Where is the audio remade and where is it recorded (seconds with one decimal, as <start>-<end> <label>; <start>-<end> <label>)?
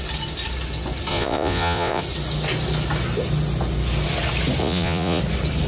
0.0-1.1 recorded; 1.1-2.0 remade; 2.0-4.6 recorded; 4.6-5.2 remade; 5.2-5.7 recorded